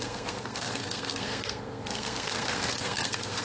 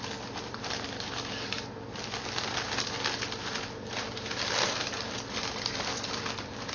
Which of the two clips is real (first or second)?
second